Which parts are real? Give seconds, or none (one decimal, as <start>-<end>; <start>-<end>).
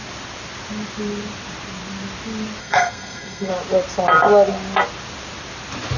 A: 0.0-2.6; 3.5-6.0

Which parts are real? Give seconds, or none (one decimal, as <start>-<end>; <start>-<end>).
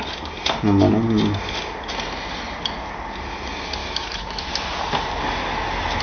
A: 0.0-3.8; 4.5-6.0